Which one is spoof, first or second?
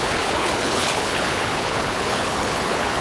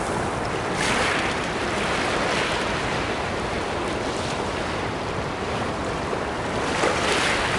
first